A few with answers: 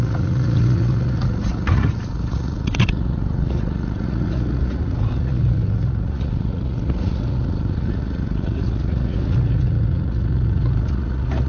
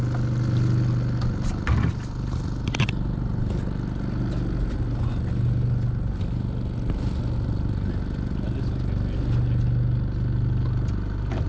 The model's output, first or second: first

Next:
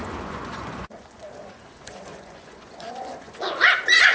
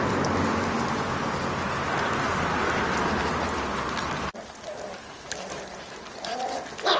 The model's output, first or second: first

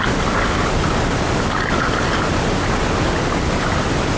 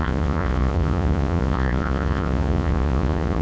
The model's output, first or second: second